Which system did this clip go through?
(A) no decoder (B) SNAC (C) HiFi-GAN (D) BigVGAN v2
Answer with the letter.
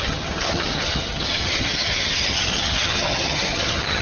C